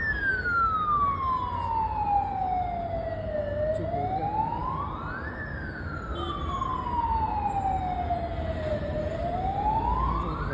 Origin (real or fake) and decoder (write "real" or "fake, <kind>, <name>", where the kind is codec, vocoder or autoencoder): real